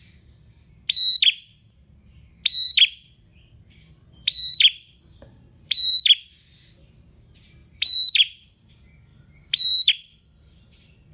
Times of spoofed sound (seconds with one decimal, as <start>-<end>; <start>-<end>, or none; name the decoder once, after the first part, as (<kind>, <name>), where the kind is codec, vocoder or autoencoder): 3.3-6.6 (vocoder, BigVGAN v2); 7.6-8.7; 9.1-9.9